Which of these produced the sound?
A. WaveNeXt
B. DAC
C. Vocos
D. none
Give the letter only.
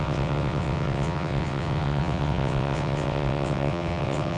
A